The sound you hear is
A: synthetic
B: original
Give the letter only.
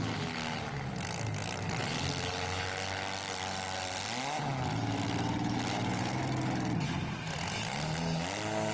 B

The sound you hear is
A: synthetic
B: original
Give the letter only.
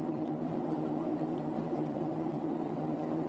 A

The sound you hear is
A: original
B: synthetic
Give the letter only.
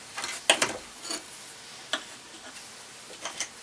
A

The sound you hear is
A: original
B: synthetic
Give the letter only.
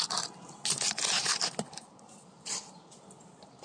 A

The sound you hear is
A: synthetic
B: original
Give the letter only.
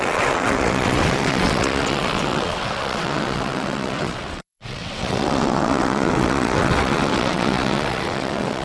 A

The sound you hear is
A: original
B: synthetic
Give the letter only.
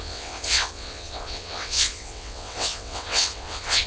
B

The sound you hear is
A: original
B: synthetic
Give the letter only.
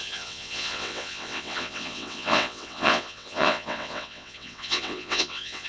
B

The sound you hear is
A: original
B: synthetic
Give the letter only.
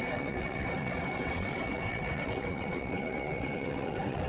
B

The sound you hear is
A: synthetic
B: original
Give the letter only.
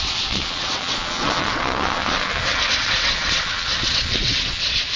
A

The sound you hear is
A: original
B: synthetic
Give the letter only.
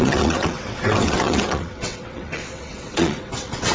B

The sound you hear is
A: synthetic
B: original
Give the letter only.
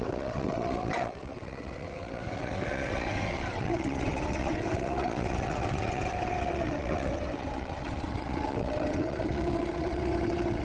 A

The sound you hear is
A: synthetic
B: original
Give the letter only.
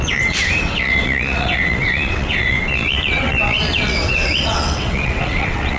A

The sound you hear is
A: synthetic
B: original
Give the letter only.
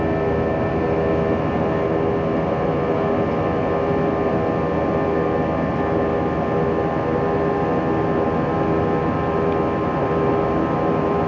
B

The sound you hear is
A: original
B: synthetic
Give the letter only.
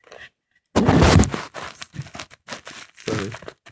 A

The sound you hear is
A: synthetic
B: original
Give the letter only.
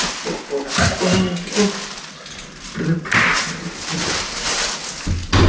B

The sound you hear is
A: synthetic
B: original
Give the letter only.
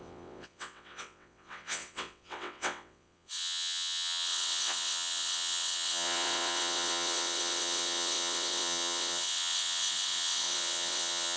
A